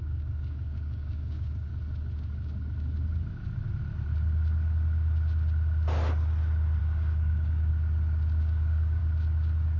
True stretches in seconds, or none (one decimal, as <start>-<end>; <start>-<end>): 1.7-6.8; 7.7-8.4; 9.0-9.8